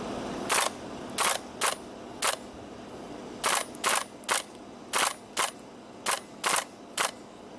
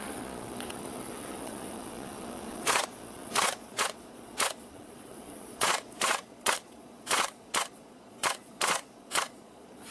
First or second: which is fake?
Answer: second